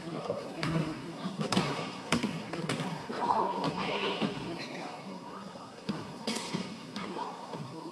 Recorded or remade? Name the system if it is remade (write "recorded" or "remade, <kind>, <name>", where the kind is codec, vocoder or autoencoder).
remade, codec, SNAC